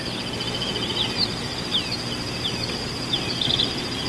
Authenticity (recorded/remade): recorded